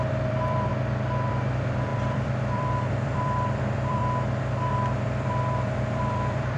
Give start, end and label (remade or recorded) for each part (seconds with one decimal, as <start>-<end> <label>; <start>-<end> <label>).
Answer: 0.0-0.7 remade; 0.7-1.3 recorded; 1.3-4.0 remade; 4.0-4.7 recorded; 4.7-6.6 remade